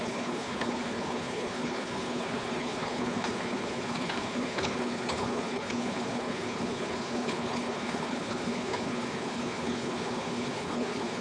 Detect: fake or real fake